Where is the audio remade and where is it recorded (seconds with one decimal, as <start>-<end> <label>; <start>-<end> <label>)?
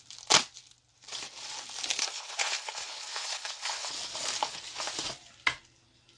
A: 0.0-2.0 recorded; 2.0-3.9 remade; 3.9-6.2 recorded